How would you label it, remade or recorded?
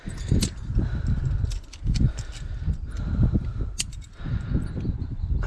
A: recorded